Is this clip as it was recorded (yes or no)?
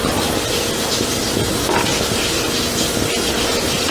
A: yes